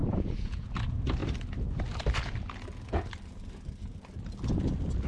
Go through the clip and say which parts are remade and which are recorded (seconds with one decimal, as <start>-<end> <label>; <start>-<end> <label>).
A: 0.0-0.7 remade; 0.7-5.1 recorded